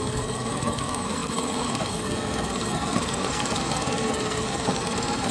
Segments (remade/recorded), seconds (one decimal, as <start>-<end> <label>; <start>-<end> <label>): 0.0-5.3 remade